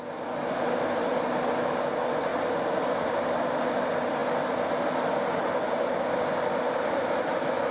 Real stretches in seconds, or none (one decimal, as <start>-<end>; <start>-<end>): 0.0-7.7